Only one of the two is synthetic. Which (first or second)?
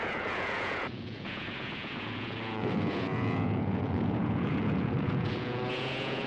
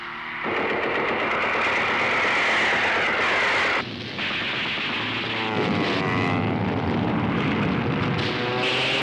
first